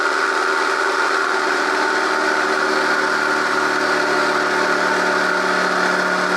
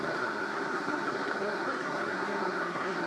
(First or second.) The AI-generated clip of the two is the second